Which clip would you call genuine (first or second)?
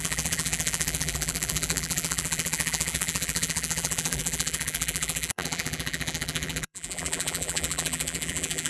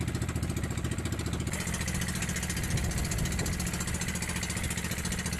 second